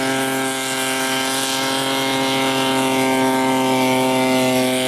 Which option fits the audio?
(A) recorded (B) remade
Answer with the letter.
A